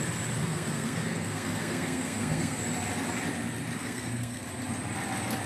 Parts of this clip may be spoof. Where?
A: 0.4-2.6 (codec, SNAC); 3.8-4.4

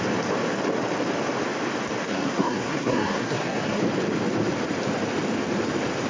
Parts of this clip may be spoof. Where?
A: 2.1-3.8 (codec, SNAC)

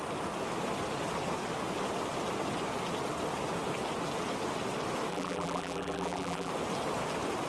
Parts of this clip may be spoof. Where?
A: 5.1-6.5 (vocoder, BigVGAN v2)

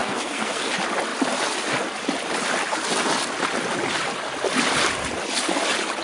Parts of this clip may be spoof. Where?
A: 0.0-0.7 (codec, SNAC)

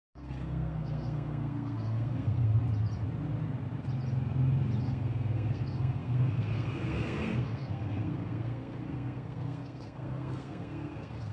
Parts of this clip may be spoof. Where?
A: 0.0-2.5 (codec, SNAC); 4.8-11.3

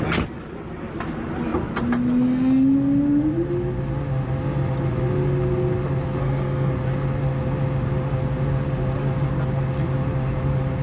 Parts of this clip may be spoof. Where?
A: 6.2-6.7 (codec, SNAC)

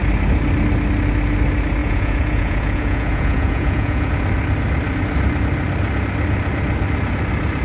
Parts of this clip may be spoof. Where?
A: 1.8-4.1 (vocoder, Vocos)

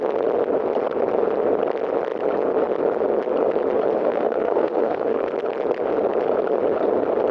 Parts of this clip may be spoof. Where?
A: 4.0-5.3 (codec, SNAC)